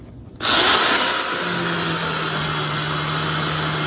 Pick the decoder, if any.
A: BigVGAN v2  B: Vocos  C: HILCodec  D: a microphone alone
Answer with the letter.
D